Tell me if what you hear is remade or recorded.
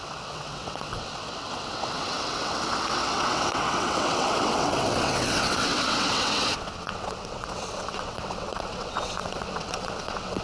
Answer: remade